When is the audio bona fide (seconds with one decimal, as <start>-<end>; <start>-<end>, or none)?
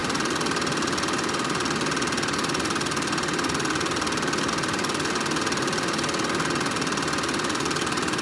0.0-8.2